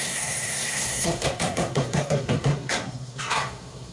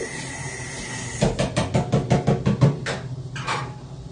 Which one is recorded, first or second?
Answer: second